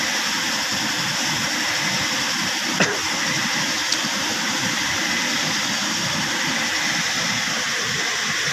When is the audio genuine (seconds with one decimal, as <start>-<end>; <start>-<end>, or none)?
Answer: 0.0-4.3; 5.0-8.5